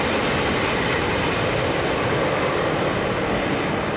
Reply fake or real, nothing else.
real